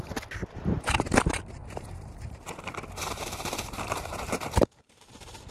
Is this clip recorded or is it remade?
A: remade